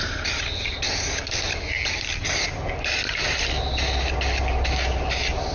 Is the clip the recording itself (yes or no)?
yes